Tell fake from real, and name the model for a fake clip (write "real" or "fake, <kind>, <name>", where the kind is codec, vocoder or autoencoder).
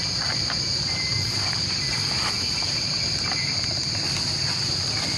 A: real